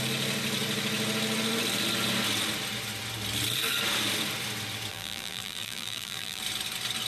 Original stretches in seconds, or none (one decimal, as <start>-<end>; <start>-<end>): 0.0-4.9; 6.4-7.1